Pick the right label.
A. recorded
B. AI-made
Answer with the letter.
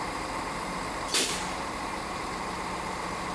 B